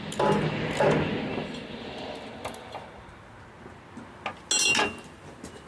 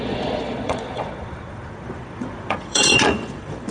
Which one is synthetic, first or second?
second